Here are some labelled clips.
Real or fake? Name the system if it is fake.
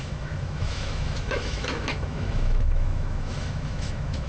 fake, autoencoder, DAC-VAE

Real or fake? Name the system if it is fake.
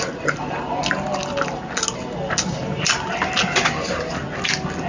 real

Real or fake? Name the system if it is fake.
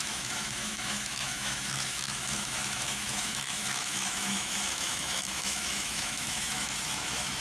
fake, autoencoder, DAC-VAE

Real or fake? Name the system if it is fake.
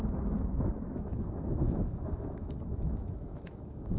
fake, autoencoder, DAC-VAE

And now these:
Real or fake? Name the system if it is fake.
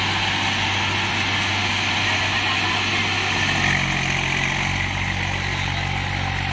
real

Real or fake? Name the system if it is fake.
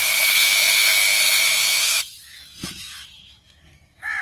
fake, autoencoder, DAC-VAE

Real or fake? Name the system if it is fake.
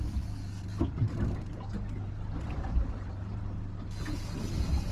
real